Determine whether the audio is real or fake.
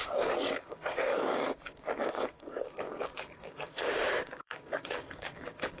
fake